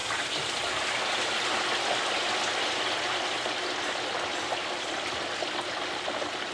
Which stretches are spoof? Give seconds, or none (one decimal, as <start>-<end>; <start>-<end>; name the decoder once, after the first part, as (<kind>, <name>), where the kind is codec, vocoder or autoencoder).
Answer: 0.0-1.1 (vocoder, BigVGAN v2)